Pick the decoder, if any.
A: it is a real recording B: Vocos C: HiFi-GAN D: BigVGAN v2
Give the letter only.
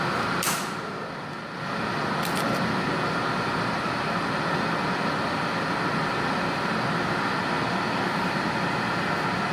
A